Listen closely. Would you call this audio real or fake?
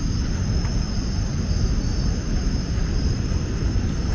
real